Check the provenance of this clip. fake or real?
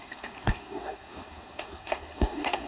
fake